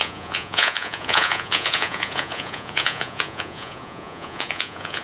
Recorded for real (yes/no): no